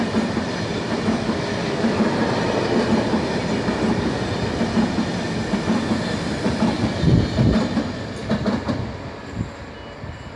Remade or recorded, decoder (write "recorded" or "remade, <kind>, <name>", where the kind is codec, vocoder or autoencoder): recorded